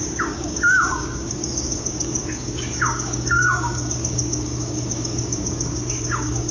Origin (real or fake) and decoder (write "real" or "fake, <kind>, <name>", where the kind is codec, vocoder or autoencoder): fake, codec, DAC